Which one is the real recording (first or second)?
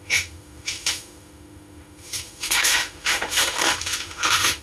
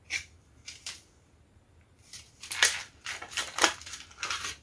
second